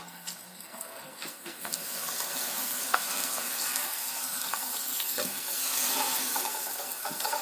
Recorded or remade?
remade